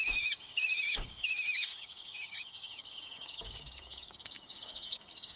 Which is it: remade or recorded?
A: remade